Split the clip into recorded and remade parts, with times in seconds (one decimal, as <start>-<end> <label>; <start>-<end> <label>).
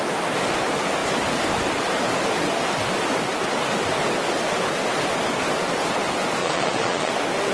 0.0-6.4 recorded; 6.4-7.1 remade; 7.1-7.5 recorded